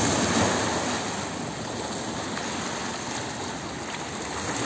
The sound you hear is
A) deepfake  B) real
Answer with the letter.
B